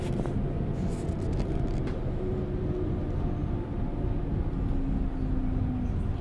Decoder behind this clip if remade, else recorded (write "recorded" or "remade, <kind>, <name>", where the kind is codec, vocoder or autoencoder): recorded